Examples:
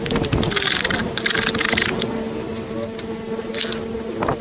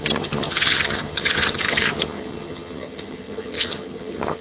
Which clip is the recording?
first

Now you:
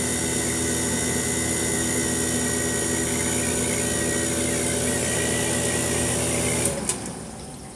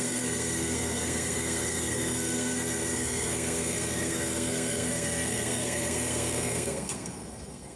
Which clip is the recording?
first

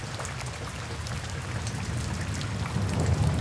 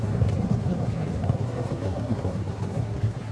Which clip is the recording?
first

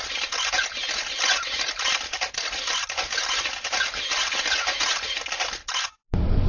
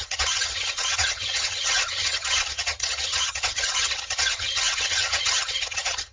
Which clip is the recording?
first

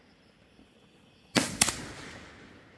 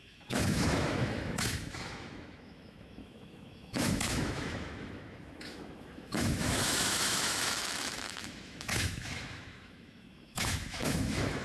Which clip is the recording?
first